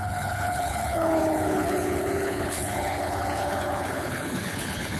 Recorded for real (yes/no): no